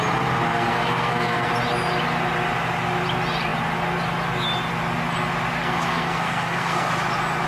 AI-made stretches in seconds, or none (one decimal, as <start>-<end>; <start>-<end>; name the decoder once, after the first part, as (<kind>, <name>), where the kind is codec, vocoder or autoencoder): 0.5-1.5 (codec, SNAC); 5.6-6.9